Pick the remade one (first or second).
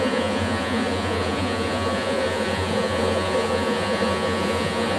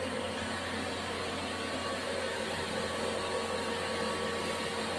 first